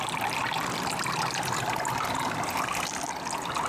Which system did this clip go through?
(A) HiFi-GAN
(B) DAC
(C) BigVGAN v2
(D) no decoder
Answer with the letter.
D